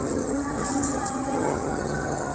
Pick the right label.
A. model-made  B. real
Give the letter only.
A